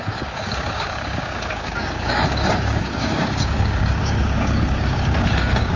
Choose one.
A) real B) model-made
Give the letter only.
B